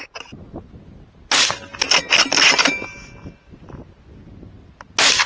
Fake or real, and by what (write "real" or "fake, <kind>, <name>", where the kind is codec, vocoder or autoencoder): real